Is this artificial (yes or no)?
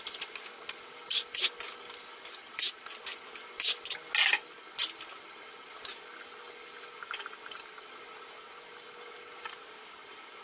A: no